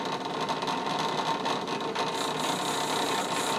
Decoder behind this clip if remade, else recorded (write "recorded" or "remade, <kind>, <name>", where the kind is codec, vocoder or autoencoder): recorded